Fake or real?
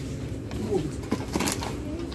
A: real